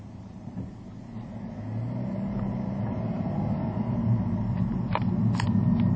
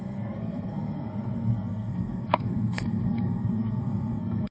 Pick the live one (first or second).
first